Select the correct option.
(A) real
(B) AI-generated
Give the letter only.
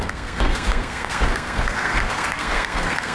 B